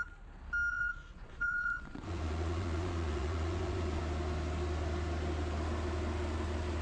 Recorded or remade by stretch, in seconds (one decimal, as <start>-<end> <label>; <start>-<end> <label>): 0.0-0.7 recorded; 0.7-4.0 remade; 4.0-6.8 recorded